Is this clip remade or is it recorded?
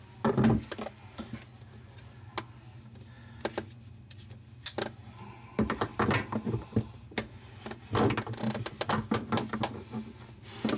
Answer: recorded